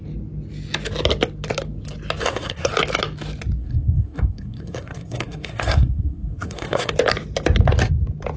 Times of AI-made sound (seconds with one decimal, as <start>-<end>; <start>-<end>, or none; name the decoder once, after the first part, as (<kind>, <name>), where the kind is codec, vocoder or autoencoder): 2.2-2.7 (codec, SNAC); 3.6-6.9